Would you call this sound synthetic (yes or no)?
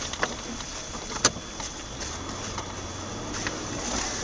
no